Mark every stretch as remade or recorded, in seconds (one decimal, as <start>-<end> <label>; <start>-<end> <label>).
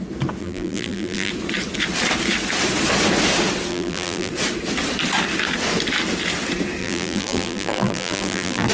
0.0-0.4 recorded; 0.4-1.3 remade; 1.3-3.7 recorded; 3.7-4.3 remade; 4.3-6.8 recorded; 6.8-8.7 remade